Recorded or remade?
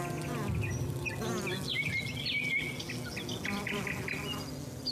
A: recorded